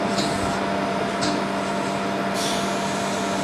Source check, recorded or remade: recorded